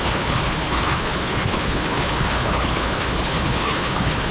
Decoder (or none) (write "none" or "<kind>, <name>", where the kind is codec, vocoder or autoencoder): codec, HILCodec